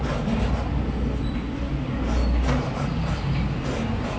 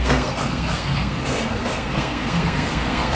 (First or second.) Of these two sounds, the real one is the first